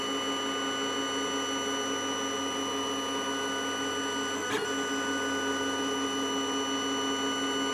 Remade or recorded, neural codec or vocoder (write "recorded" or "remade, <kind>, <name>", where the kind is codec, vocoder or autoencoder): recorded